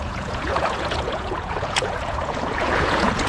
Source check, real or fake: fake